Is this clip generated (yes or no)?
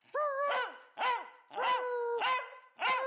no